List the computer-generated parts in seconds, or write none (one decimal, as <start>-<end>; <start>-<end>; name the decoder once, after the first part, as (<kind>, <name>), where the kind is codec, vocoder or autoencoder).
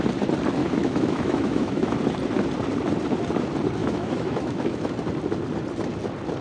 0.6-2.0 (autoencoder, DAC-VAE); 3.8-4.9